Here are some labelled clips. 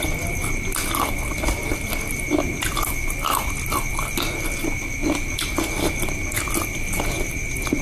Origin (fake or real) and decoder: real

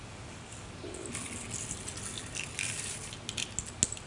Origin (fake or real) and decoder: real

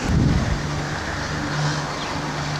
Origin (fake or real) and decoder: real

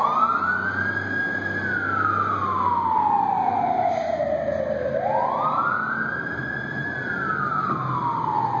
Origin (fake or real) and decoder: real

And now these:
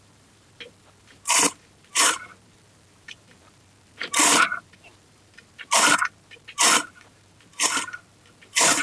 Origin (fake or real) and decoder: fake, vocoder, BigVGAN v2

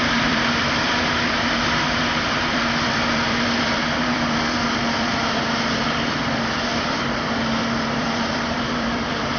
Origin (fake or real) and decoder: fake, vocoder, BigVGAN v2